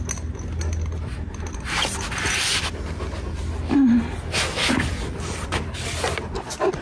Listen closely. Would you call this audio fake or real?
real